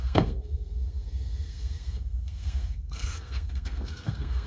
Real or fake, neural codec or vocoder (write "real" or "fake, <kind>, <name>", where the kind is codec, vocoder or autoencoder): fake, codec, SNAC